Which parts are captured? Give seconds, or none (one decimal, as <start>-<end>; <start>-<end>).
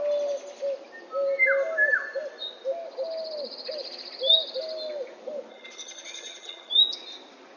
0.0-5.5; 6.7-7.6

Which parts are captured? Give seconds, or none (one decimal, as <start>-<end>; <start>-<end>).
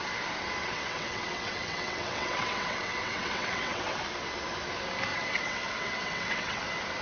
0.0-0.6; 4.0-5.1; 6.6-7.0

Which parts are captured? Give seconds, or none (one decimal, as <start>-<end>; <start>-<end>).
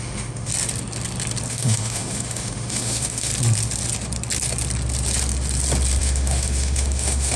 0.5-1.5; 3.3-6.0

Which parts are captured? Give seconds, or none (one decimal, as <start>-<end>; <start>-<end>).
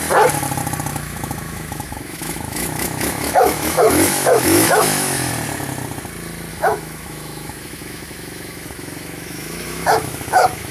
0.0-0.9; 5.3-6.5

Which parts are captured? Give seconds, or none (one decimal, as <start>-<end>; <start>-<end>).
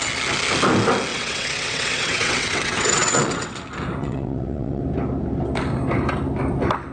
0.0-1.1; 3.6-4.0; 4.8-6.9